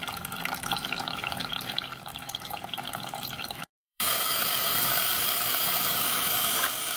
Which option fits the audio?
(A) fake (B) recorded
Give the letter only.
A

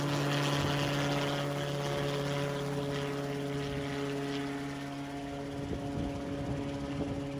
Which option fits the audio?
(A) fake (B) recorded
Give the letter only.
B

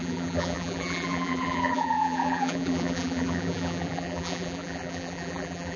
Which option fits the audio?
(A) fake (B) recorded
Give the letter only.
A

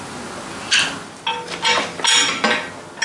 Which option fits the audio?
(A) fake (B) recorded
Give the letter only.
B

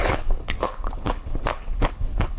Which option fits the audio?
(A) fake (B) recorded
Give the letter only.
A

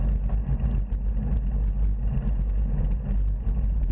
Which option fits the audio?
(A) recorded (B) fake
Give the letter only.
A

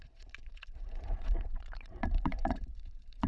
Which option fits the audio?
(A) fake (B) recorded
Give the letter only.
A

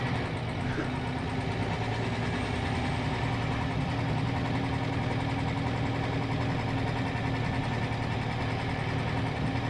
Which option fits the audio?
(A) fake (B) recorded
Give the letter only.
B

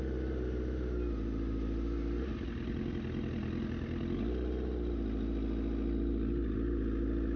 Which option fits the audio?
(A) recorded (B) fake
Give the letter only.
A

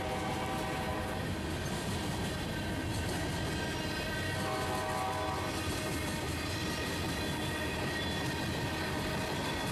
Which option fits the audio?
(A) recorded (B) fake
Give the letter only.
A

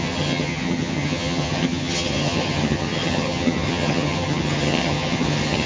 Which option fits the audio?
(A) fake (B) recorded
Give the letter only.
A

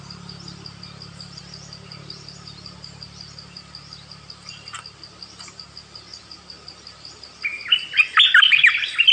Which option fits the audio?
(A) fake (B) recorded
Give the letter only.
A